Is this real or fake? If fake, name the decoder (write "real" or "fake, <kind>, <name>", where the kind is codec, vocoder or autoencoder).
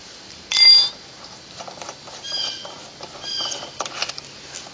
real